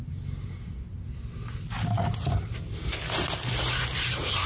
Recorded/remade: recorded